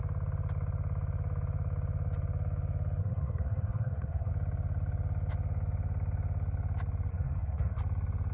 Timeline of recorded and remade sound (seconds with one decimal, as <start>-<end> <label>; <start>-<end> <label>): 0.0-3.0 recorded; 3.0-4.3 remade; 4.3-7.1 recorded; 7.1-7.8 remade; 7.8-8.3 recorded